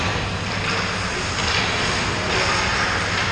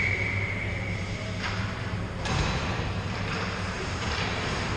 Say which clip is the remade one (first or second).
second